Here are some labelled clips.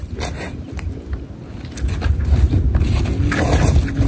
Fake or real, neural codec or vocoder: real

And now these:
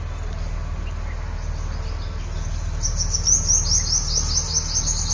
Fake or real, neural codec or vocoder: real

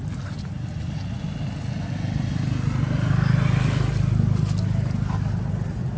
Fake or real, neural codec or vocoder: real